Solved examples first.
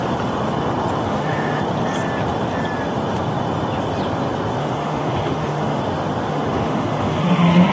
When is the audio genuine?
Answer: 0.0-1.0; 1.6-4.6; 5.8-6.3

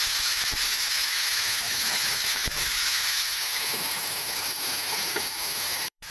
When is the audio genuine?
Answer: none